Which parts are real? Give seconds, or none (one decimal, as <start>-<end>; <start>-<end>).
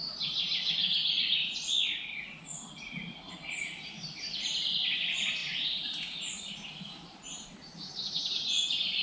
1.0-3.6